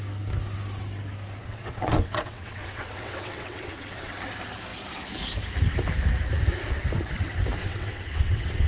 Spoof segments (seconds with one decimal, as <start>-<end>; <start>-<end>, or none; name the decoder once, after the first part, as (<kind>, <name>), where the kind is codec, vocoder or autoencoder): 1.4-4.2 (vocoder, WaveNeXt); 7.6-8.7